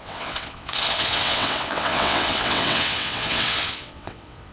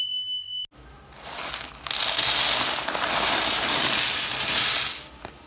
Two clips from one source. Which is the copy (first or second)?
first